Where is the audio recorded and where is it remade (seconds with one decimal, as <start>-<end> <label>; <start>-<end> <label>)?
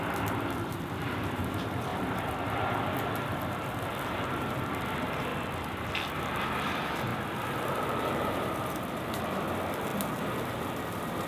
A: 0.0-1.9 remade; 1.9-2.5 recorded; 2.5-5.3 remade; 5.3-6.1 recorded; 6.1-9.9 remade; 9.9-10.5 recorded; 10.5-11.3 remade